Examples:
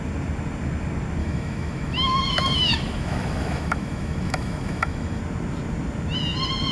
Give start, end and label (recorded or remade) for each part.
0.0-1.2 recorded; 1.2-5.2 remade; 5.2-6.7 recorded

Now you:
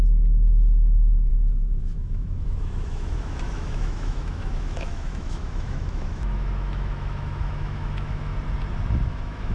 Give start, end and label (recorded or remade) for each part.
0.0-1.3 remade; 1.3-1.8 recorded; 1.8-8.3 remade; 8.3-9.1 recorded; 9.1-9.5 remade

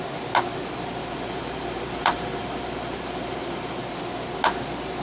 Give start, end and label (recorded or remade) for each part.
0.0-1.0 recorded; 1.0-3.8 remade; 3.8-5.0 recorded

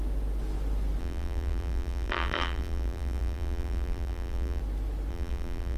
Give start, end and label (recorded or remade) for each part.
0.0-1.0 recorded; 1.0-4.6 remade; 4.6-5.1 recorded; 5.1-5.8 remade

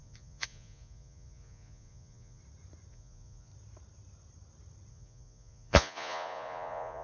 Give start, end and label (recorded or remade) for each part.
0.0-2.4 remade; 2.4-2.9 recorded; 2.9-3.5 remade; 3.5-4.9 recorded; 4.9-7.0 remade